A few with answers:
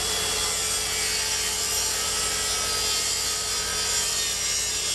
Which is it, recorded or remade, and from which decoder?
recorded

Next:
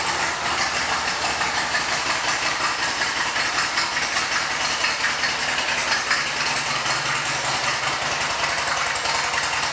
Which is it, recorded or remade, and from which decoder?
recorded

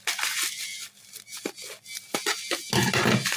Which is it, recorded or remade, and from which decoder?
recorded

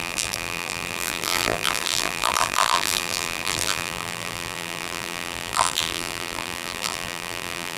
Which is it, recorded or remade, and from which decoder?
remade, vocoder, BigVGAN v2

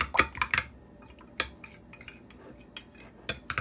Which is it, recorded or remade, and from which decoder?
recorded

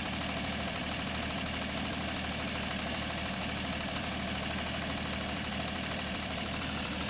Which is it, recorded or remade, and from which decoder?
remade, vocoder, BigVGAN v2